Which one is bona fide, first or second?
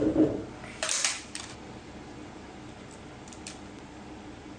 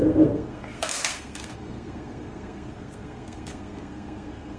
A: first